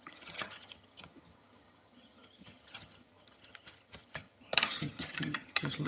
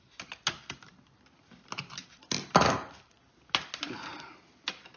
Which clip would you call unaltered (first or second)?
second